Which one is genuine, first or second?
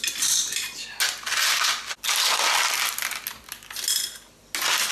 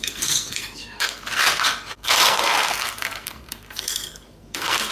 first